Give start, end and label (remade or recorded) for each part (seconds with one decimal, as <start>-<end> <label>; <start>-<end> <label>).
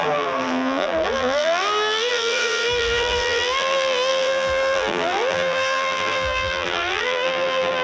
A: 0.0-7.8 remade